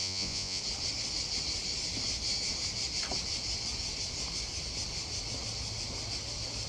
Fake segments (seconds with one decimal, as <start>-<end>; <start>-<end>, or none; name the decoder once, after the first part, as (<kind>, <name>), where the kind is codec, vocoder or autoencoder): 0.0-0.6 (vocoder, Vocos)